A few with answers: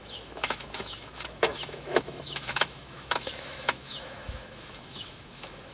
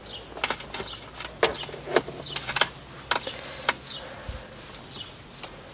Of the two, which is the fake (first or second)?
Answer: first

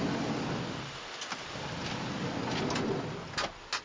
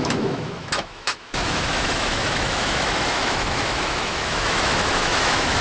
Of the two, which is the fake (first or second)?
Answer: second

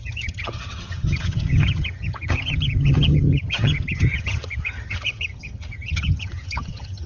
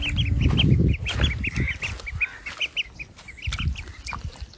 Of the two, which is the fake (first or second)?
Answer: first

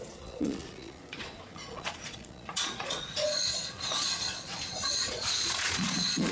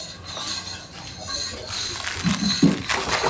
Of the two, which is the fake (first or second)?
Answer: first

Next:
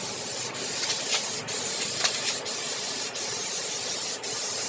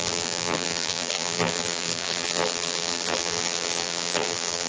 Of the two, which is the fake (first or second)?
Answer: second